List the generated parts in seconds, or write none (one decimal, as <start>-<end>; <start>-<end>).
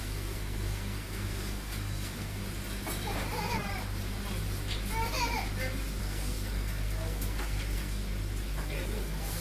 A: 0.0-2.4; 6.0-8.0; 8.6-9.4